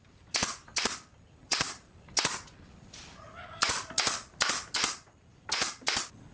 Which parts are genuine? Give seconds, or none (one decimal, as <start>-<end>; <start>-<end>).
0.0-6.3